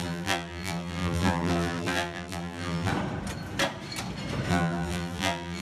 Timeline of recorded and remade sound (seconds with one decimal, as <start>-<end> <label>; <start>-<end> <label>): 0.0-2.9 remade; 2.9-4.5 recorded; 4.5-5.6 remade